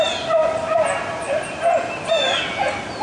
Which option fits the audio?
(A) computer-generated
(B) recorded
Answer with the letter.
B